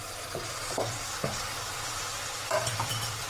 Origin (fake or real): fake